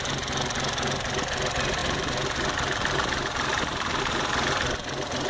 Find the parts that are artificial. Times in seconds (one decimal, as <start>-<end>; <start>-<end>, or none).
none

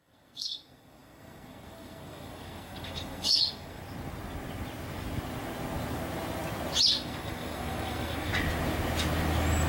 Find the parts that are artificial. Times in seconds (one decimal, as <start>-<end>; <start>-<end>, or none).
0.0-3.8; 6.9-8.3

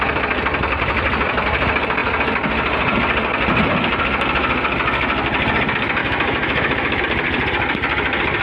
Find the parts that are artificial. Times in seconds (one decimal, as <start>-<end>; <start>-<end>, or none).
6.0-7.0

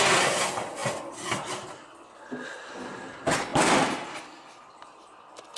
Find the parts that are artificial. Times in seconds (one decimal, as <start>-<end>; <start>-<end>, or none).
none

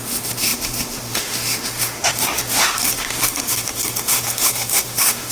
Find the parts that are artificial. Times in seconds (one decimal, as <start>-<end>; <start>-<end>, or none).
0.0-5.3